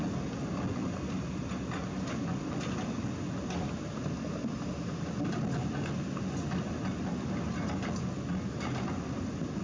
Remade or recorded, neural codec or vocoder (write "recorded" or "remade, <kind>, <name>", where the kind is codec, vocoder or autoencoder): recorded